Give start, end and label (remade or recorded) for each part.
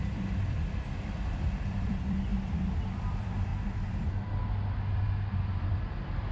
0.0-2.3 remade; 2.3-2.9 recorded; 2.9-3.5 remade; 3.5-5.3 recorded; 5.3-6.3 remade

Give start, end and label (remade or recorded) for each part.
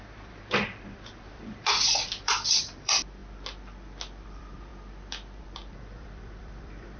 0.0-3.2 remade; 3.2-4.2 recorded; 4.2-4.7 remade; 4.7-5.4 recorded; 5.4-7.0 remade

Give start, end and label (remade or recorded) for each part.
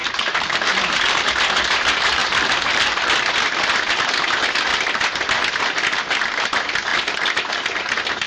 0.0-1.3 remade; 1.3-2.2 recorded; 2.2-3.3 remade; 3.3-8.3 recorded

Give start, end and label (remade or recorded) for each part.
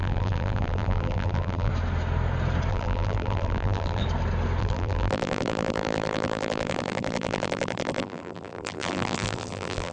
0.0-1.7 remade; 1.7-2.7 recorded; 2.7-4.0 remade; 4.0-4.6 recorded; 4.6-9.9 remade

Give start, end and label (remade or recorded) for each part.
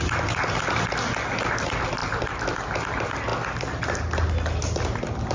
0.0-5.3 recorded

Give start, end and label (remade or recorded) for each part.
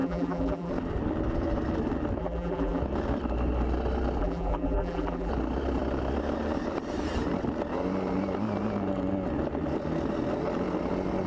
0.0-0.7 remade; 0.7-2.2 recorded; 2.2-2.8 remade; 2.8-4.2 recorded; 4.2-5.3 remade; 5.3-11.3 recorded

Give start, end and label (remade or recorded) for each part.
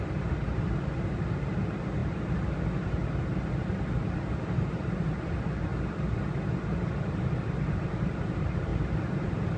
0.0-2.0 remade; 2.0-4.5 recorded; 4.5-5.7 remade; 5.7-7.7 recorded; 7.7-8.7 remade; 8.7-9.6 recorded